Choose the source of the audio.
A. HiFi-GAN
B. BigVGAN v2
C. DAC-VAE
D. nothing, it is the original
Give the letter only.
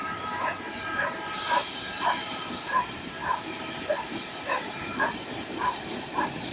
B